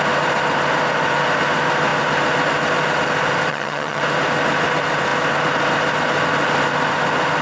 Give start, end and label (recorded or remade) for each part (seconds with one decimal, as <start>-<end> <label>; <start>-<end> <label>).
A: 0.0-3.5 recorded; 3.5-4.0 remade; 4.0-7.4 recorded